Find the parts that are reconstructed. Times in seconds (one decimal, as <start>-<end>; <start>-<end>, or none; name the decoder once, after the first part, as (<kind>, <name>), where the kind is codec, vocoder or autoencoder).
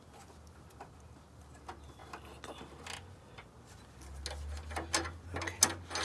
none